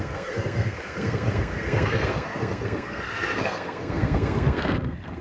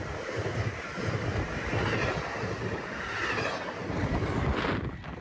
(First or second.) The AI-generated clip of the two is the first